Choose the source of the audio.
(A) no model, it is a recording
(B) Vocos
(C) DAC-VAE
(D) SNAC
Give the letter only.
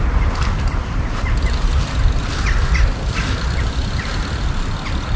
A